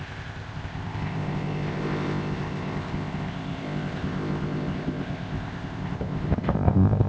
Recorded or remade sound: remade